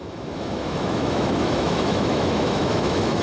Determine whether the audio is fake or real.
fake